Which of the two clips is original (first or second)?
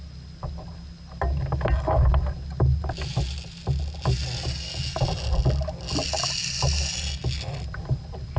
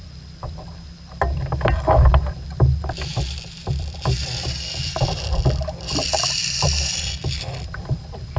first